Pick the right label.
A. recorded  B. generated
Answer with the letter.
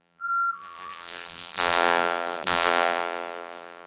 B